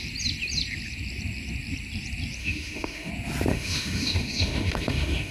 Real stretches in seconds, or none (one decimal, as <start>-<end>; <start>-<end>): 0.0-2.4; 3.1-3.5